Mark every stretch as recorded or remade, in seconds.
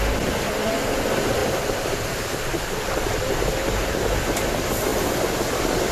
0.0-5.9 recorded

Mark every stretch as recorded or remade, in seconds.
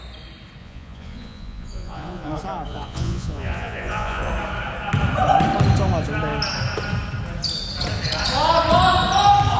0.0-0.6 recorded; 0.6-2.3 remade; 2.3-2.7 recorded; 2.7-4.3 remade; 4.3-9.6 recorded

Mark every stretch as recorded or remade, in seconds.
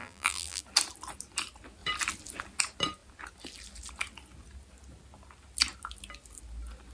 0.0-0.6 remade; 0.6-6.9 recorded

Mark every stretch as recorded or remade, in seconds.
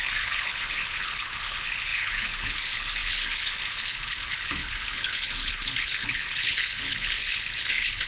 0.0-8.1 remade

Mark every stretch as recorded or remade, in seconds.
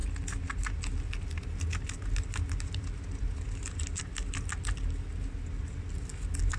0.0-6.6 recorded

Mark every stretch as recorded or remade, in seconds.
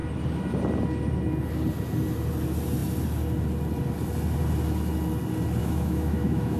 0.0-5.6 recorded; 5.6-6.6 remade